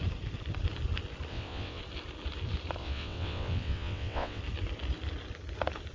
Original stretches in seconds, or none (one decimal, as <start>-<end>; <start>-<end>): 0.0-1.3; 1.8-2.8; 4.4-5.9